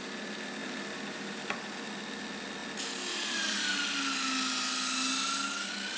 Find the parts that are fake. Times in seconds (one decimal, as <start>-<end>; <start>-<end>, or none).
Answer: none